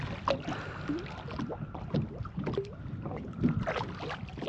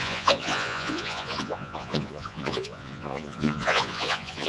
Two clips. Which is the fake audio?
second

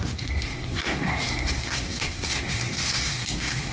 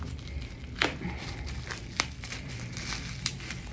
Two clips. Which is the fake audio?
first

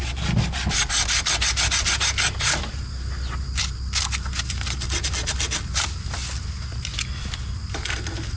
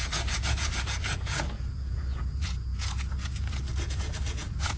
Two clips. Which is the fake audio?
second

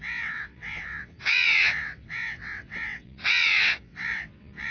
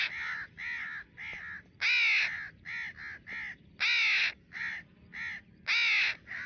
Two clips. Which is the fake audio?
first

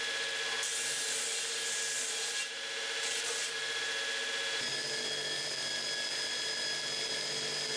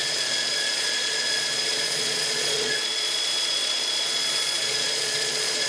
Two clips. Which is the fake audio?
second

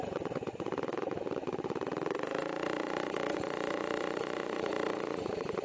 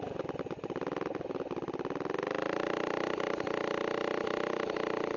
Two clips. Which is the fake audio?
first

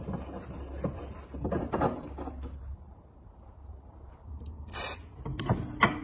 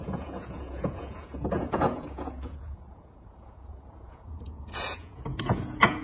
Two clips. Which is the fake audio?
second